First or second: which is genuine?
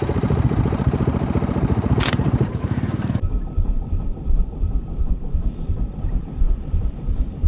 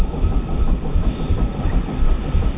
second